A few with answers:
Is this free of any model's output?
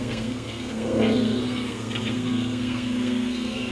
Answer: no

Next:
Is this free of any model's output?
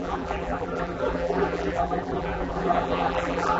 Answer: no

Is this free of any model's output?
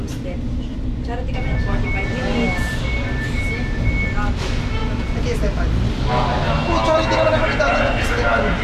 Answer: yes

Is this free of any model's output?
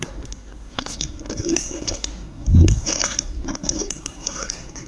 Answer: no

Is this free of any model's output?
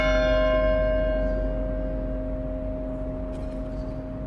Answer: yes